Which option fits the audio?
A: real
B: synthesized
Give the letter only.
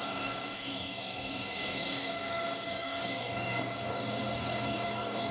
B